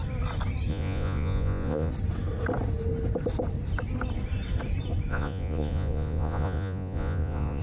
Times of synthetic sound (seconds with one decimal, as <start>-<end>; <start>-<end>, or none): 0.7-1.9; 5.1-7.6

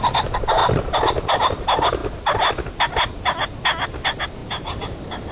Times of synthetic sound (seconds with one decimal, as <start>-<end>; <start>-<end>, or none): none

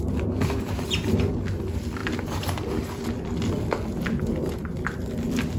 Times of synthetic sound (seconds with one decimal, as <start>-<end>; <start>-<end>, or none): none

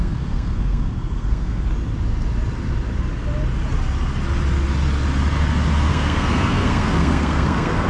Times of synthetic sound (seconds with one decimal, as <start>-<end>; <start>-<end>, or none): 0.0-1.7; 5.9-7.9

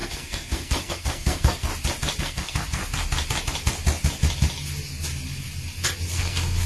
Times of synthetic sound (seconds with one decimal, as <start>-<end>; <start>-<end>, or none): 0.0-1.7; 2.2-2.8; 6.1-6.7